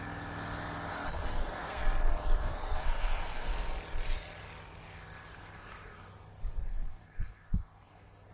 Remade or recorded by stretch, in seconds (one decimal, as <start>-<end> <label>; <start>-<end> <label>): 0.0-0.9 recorded; 0.9-1.8 remade; 1.8-2.4 recorded; 2.4-3.5 remade; 3.5-5.3 recorded; 5.3-6.1 remade; 6.1-6.7 recorded; 6.7-8.3 remade